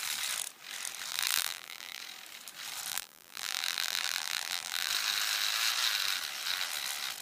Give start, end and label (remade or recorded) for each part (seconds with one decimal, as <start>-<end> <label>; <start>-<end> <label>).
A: 0.0-1.1 recorded; 1.1-2.0 remade; 2.0-2.9 recorded; 2.9-4.9 remade; 4.9-7.2 recorded